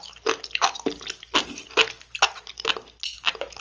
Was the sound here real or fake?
real